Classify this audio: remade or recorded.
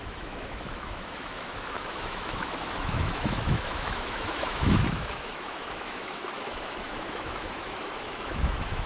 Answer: remade